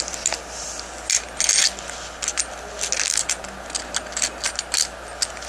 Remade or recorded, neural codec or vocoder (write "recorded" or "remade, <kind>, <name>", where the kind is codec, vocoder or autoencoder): recorded